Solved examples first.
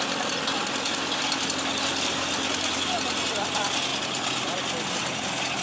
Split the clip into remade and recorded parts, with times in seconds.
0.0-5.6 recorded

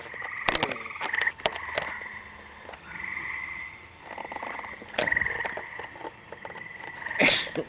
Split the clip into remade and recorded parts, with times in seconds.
0.0-7.7 recorded

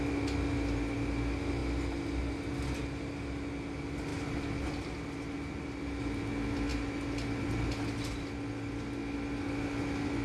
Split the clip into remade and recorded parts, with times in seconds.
0.0-10.2 recorded